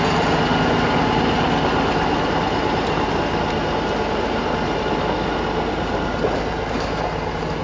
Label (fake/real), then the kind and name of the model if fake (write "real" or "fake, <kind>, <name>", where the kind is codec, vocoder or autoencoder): real